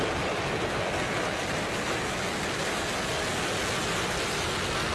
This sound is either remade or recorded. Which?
recorded